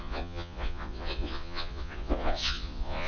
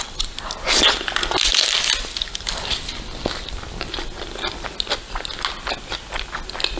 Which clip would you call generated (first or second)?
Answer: first